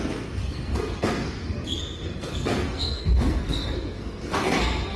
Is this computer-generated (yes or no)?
yes